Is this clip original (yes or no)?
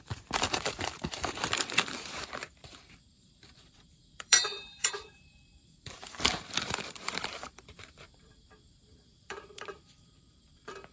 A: no